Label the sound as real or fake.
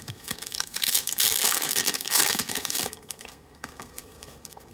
fake